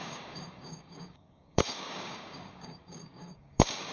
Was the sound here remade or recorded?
remade